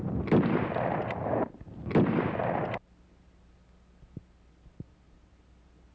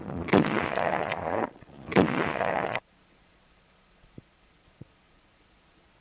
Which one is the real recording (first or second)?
first